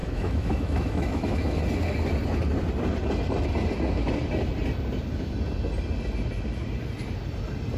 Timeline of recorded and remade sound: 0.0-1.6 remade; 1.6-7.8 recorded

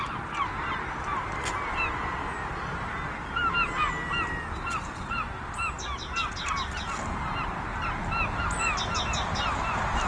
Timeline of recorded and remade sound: 0.0-10.1 recorded

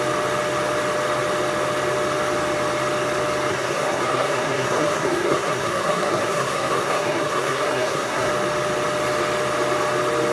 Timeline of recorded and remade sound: 0.0-3.5 recorded; 3.5-8.3 remade; 8.3-10.3 recorded

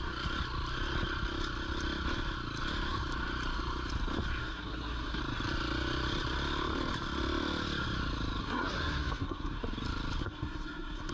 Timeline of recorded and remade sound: 0.0-4.4 recorded; 4.4-5.2 remade; 5.2-8.4 recorded; 8.4-9.6 remade; 9.6-10.2 recorded; 10.2-11.1 remade

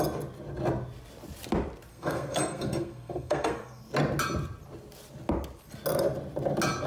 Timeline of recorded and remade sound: 0.0-1.9 recorded; 1.9-3.8 remade; 3.8-6.9 recorded